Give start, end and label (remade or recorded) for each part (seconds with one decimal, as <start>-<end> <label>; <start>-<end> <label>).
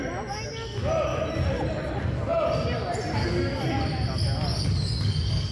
0.0-3.2 recorded; 3.2-3.7 remade; 3.7-4.5 recorded; 4.5-5.5 remade